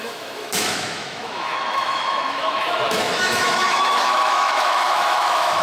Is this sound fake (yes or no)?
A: yes